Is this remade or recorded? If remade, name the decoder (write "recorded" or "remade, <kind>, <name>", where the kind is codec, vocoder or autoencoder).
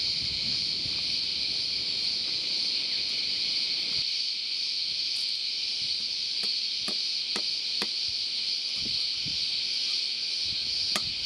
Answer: recorded